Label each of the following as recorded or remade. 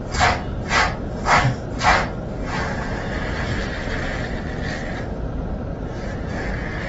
recorded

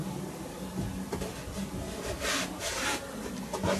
recorded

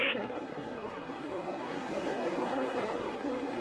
remade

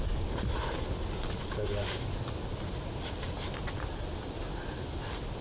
recorded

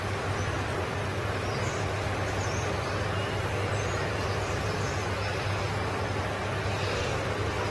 recorded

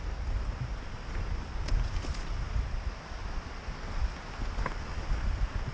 recorded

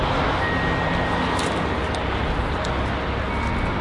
recorded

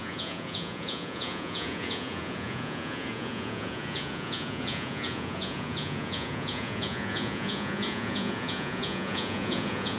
remade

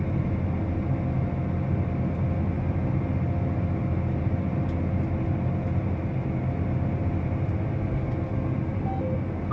recorded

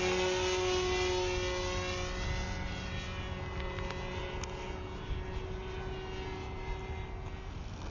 recorded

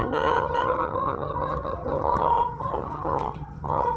remade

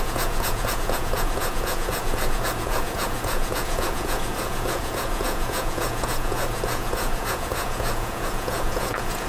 remade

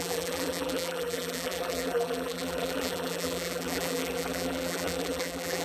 remade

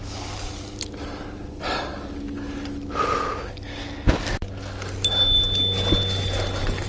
recorded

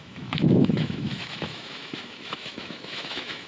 remade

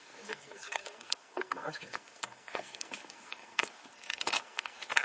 remade